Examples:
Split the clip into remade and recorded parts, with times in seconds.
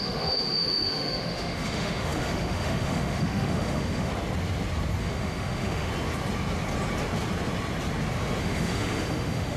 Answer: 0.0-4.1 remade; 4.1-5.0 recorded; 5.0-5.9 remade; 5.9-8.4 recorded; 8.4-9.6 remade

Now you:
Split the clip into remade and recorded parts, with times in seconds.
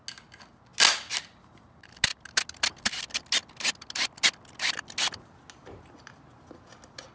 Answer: 0.0-7.1 recorded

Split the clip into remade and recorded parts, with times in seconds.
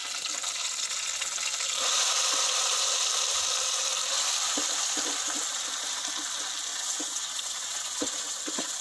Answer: 0.0-6.7 recorded; 6.7-8.8 remade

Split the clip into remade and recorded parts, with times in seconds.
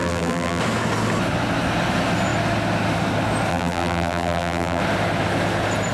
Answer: 0.0-0.6 remade; 0.6-3.5 recorded; 3.5-4.8 remade; 4.8-5.9 recorded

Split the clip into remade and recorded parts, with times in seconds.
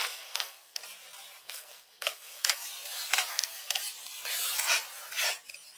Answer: 0.0-0.8 remade; 0.8-1.4 recorded; 1.4-2.6 remade; 2.6-3.3 recorded; 3.3-3.8 remade; 3.8-5.8 recorded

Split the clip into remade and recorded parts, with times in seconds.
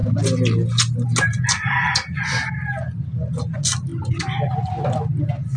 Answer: 0.0-5.6 recorded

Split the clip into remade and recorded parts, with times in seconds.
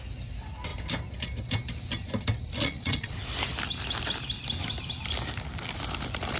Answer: 0.0-2.6 recorded; 2.6-3.1 remade; 3.1-6.4 recorded